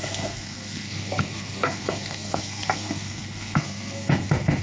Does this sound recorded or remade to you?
remade